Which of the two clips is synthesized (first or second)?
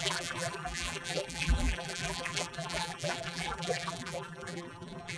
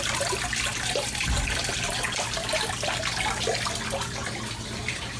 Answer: first